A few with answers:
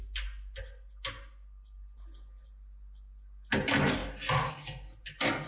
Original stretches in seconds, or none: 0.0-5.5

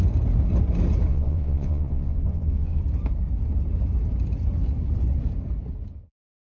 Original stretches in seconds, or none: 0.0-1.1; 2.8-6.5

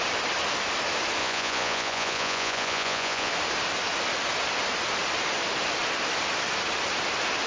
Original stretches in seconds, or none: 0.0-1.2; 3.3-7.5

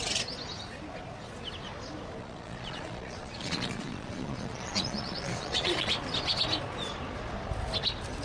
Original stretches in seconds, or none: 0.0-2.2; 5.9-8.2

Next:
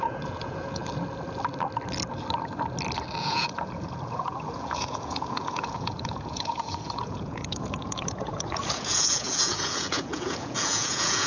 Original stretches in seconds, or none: 0.8-3.2

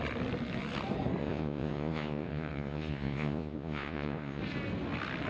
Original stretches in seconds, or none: 0.0-1.2; 4.4-5.3

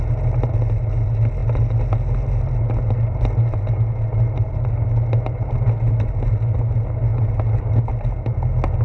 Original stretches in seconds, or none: 0.0-8.8